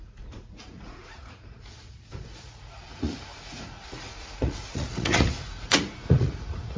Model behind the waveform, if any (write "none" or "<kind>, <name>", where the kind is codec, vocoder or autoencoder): vocoder, Vocos